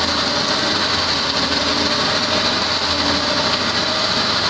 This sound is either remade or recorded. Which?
recorded